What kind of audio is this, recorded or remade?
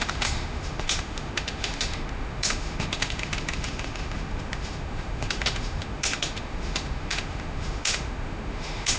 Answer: remade